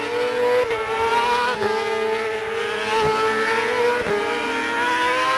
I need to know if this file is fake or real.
real